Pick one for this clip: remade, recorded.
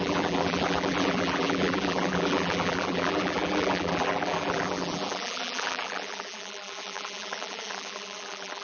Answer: remade